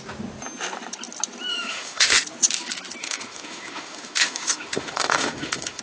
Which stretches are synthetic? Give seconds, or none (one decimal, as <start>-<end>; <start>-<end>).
1.5-2.1; 3.0-5.8